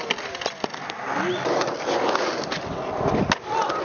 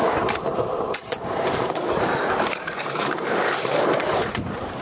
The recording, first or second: first